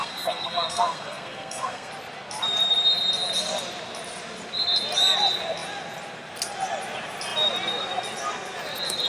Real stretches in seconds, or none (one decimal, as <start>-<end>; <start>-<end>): 1.9-9.1